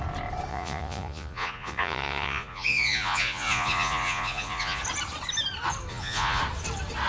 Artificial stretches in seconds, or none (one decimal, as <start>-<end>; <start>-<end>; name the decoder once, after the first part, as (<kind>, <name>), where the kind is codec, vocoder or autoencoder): 0.5-4.8 (vocoder, Vocos); 5.9-6.4